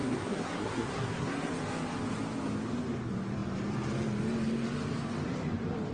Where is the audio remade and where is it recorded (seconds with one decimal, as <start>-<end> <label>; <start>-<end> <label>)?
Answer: 0.0-1.5 remade; 1.5-5.9 recorded